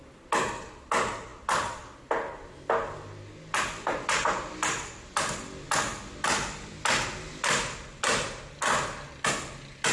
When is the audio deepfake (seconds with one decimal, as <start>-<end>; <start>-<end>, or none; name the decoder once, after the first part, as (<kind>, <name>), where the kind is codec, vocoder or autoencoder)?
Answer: none